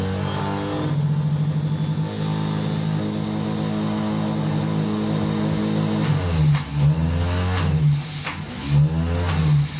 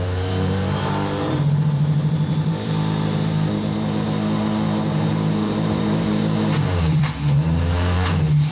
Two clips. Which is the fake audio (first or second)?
second